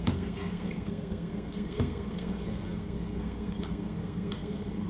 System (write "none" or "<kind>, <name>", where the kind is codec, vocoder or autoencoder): codec, SNAC